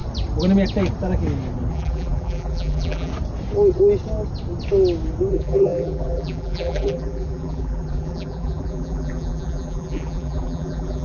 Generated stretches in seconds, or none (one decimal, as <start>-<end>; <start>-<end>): 1.7-3.1; 5.3-11.0